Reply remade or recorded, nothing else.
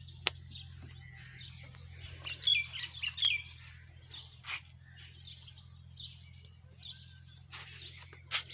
recorded